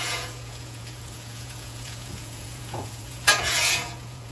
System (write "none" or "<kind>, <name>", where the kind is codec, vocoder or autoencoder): vocoder, Vocos